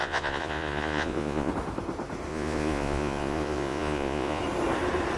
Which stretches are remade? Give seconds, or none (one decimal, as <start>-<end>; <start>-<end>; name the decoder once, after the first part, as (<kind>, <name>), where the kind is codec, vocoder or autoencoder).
0.0-1.5 (vocoder, Vocos); 2.3-4.4